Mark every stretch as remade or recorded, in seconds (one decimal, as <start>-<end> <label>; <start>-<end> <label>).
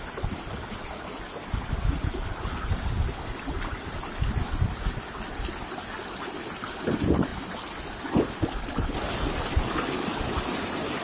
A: 0.0-11.0 recorded